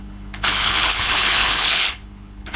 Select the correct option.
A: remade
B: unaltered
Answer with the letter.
A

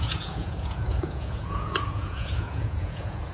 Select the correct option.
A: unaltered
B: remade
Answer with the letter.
B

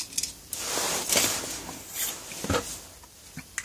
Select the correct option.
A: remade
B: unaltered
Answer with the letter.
B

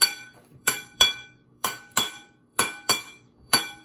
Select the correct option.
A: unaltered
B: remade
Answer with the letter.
B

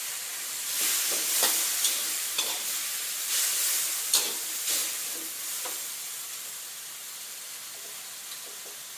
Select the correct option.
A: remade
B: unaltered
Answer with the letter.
A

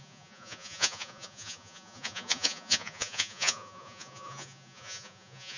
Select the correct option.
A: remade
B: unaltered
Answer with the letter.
A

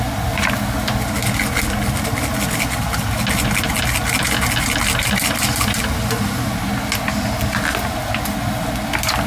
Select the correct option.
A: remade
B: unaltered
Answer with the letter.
B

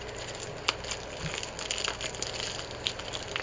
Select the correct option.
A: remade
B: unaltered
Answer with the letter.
B